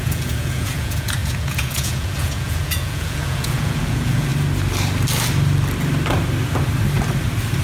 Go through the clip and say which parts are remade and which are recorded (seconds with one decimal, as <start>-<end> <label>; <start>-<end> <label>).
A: 0.0-4.3 remade; 4.3-7.6 recorded